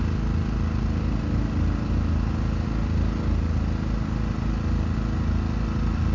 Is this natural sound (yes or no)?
yes